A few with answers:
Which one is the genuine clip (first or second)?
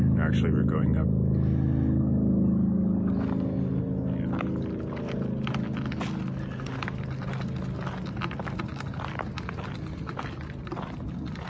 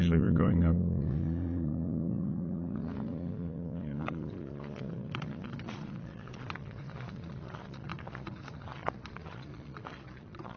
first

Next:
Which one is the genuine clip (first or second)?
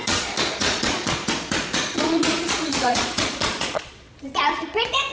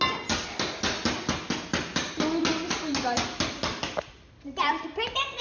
second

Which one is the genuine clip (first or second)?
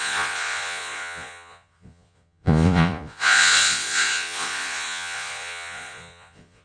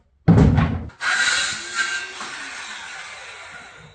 second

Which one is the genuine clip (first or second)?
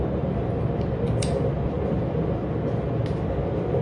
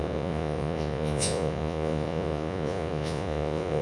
first